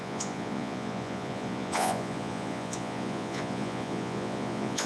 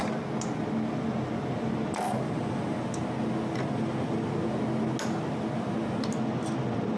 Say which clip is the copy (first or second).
first